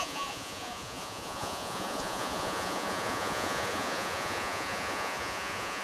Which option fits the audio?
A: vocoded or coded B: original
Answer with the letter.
A